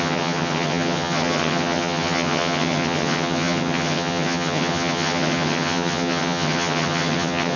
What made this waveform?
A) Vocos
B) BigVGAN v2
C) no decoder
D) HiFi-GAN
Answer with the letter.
D